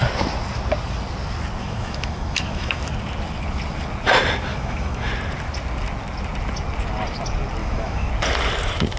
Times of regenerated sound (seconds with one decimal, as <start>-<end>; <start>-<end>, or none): 1.6-2.8; 4.5-5.1; 7.6-8.1